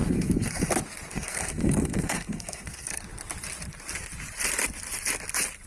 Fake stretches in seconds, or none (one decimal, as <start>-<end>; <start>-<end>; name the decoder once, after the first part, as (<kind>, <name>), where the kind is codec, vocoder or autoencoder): 0.0-0.7 (codec, SNAC); 1.1-3.0